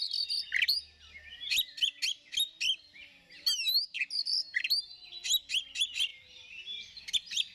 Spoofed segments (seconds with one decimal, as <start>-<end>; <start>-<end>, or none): 6.1-7.0